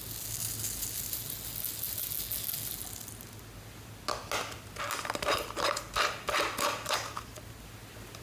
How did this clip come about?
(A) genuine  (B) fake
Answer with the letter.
A